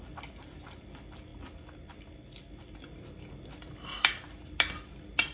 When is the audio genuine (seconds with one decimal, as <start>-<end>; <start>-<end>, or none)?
0.0-5.3